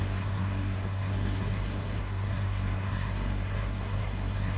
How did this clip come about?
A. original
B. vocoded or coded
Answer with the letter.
B